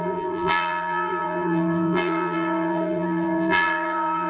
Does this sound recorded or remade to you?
remade